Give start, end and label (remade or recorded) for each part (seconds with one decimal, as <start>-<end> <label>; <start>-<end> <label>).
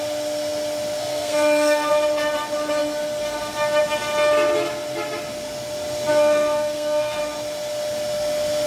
0.0-1.0 recorded; 1.0-1.9 remade; 1.9-6.1 recorded; 6.1-7.2 remade; 7.2-8.7 recorded